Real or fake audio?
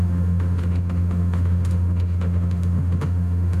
fake